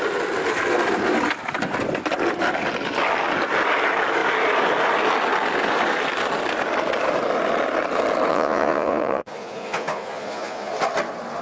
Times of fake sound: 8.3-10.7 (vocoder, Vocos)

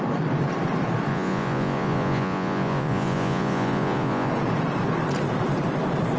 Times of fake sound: 1.1-4.3 (vocoder, Vocos)

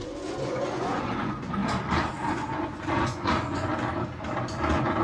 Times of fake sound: 0.0-1.6 (vocoder, Vocos); 2.3-3.7; 4.5-5.0

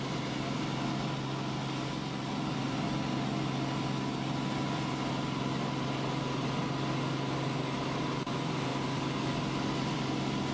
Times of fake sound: none